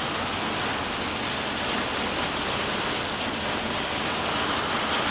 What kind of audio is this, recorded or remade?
recorded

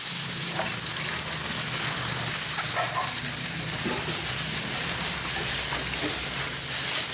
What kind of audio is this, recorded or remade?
recorded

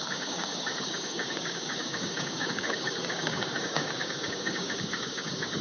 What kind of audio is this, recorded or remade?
remade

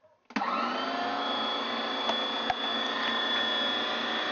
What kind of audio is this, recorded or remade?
recorded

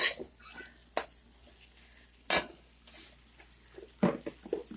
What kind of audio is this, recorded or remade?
recorded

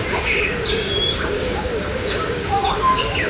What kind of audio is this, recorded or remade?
remade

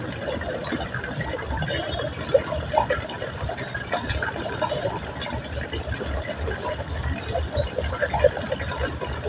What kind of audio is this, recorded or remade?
recorded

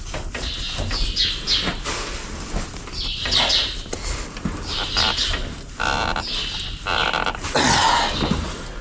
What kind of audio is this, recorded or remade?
recorded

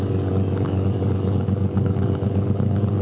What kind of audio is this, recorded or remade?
remade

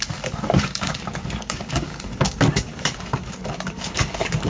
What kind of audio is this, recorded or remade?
remade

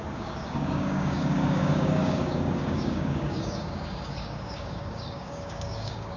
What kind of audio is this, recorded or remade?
remade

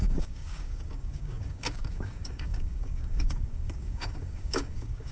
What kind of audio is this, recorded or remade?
remade